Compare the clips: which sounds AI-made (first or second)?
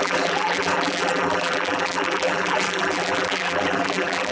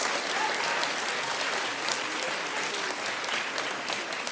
first